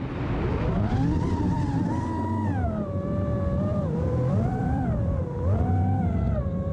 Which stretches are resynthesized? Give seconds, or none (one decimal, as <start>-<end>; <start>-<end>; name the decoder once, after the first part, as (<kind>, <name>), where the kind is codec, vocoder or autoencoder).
3.7-5.7 (vocoder, BigVGAN v2)